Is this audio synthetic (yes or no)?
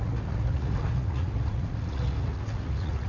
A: yes